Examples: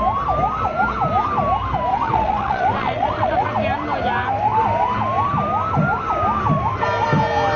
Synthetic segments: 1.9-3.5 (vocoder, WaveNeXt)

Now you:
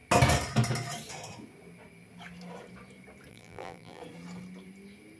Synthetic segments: 3.3-4.0 (vocoder, BigVGAN v2)